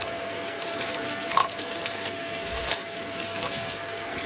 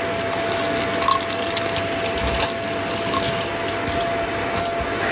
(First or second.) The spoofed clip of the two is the first